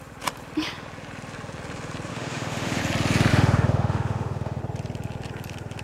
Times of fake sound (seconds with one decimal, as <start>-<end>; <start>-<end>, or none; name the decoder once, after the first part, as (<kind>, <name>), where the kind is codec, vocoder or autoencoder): 2.1-2.8 (autoencoder, DAC-VAE); 3.3-4.6